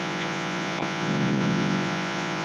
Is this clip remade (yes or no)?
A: yes